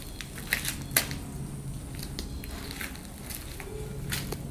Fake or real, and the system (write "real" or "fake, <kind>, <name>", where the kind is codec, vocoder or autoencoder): real